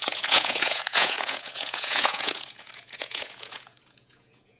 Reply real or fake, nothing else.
fake